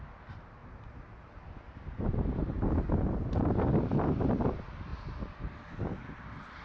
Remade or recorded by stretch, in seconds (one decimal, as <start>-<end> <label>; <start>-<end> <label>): 0.0-6.6 recorded